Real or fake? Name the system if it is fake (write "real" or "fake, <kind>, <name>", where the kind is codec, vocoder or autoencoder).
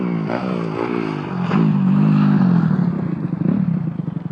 real